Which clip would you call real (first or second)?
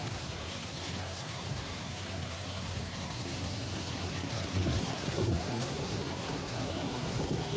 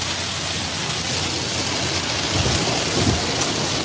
second